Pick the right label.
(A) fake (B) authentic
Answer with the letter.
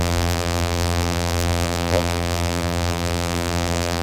A